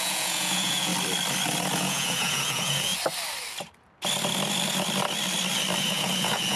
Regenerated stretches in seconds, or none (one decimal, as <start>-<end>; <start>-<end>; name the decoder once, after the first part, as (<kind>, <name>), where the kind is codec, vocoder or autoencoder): 0.0-0.9 (vocoder, Vocos); 1.8-2.9; 5.8-6.6